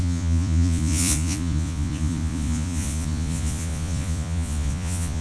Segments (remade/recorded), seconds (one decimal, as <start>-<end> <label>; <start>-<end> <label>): 0.0-5.2 remade